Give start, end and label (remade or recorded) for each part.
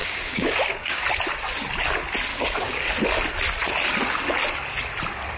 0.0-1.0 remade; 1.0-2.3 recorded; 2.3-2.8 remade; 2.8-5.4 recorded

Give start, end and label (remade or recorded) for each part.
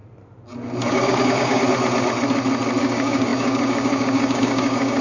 0.0-0.9 recorded; 0.9-1.6 remade; 1.6-2.8 recorded; 2.8-5.0 remade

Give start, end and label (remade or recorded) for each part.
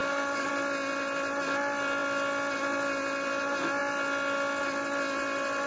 0.0-0.5 remade; 0.5-5.7 recorded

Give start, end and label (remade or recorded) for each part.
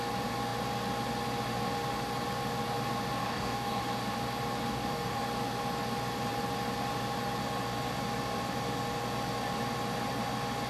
0.0-3.2 recorded; 3.2-3.8 remade; 3.8-4.7 recorded; 4.7-5.2 remade; 5.2-10.7 recorded